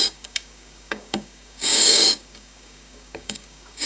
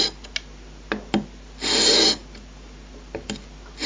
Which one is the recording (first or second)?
second